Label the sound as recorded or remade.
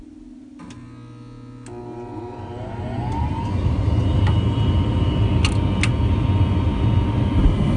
recorded